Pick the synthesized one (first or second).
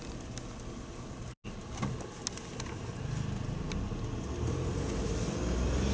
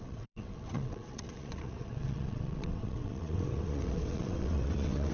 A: second